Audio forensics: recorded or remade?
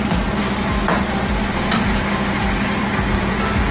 recorded